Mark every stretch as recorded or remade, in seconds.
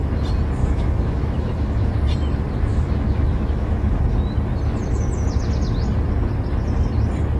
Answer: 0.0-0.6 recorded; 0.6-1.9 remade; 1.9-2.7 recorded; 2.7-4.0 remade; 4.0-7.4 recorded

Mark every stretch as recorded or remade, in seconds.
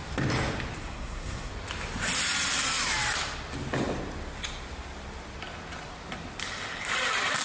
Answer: 0.0-0.8 recorded; 0.8-1.5 remade; 1.5-7.4 recorded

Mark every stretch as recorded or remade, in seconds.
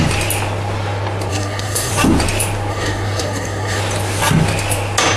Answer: 0.0-1.3 recorded; 1.3-1.9 remade; 1.9-2.7 recorded; 2.7-3.8 remade; 3.8-5.2 recorded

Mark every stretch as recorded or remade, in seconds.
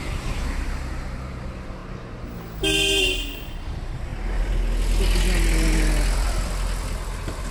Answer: 0.0-1.8 remade; 1.8-3.4 recorded; 3.4-4.1 remade; 4.1-6.1 recorded; 6.1-7.5 remade